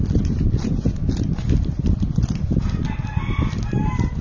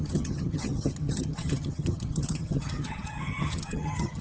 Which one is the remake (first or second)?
second